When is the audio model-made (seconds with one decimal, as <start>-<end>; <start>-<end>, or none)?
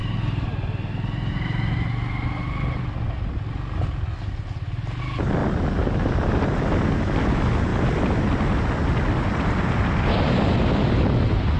none